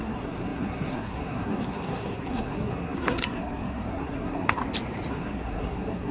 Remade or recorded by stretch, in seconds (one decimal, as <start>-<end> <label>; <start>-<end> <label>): 0.0-4.6 remade; 4.6-5.1 recorded; 5.1-6.1 remade